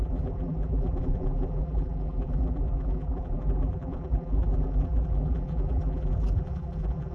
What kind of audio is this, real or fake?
fake